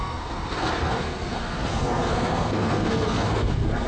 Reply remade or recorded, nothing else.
remade